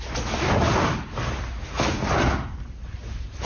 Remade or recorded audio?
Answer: recorded